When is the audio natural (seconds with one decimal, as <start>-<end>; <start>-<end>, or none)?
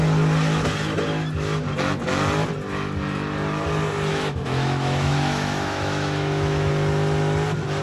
0.0-4.1; 6.7-7.8